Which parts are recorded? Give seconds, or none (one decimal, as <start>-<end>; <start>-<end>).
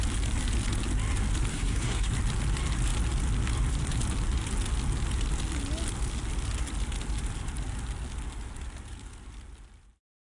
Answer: 0.0-1.5; 2.1-10.4